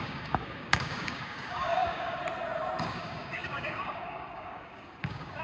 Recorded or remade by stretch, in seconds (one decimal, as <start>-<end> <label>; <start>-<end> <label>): 0.0-2.2 remade; 2.2-2.8 recorded; 2.8-5.4 remade